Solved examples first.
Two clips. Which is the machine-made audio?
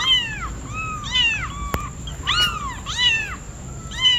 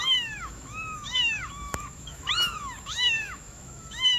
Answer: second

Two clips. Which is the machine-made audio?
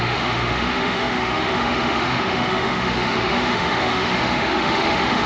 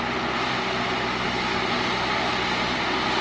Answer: first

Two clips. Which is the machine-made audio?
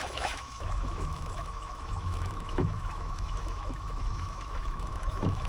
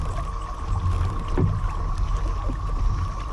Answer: first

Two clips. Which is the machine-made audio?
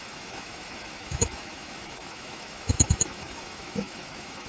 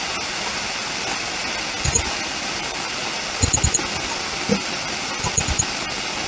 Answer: first